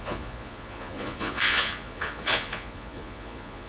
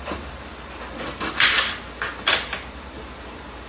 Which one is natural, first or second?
second